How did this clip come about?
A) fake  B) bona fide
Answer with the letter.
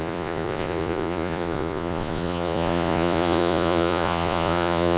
A